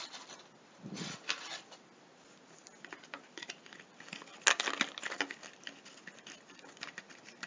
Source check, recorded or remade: recorded